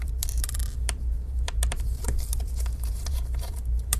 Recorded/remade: remade